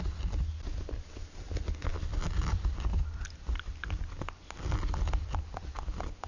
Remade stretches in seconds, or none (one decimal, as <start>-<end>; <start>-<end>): none